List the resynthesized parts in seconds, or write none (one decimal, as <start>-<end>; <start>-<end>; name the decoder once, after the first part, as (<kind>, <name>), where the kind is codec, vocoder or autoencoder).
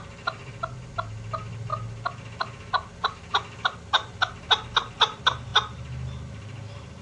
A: none